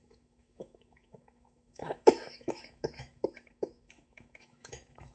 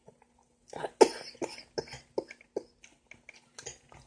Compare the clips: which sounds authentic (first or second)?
second